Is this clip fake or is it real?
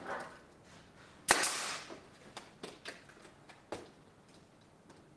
real